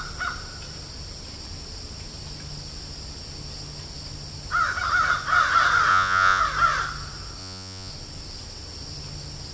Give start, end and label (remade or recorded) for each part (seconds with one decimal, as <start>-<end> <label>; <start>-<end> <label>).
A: 0.0-5.9 recorded; 5.9-6.4 remade; 6.4-7.4 recorded; 7.4-7.9 remade; 7.9-9.5 recorded